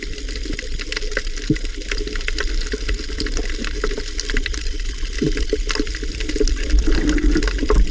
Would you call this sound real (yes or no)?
yes